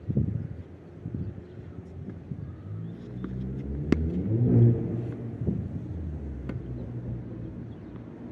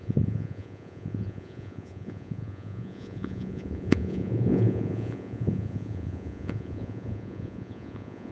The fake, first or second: second